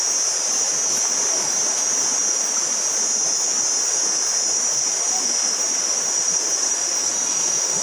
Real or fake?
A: real